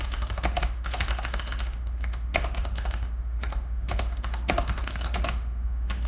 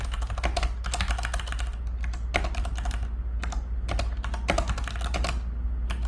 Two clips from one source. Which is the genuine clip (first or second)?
second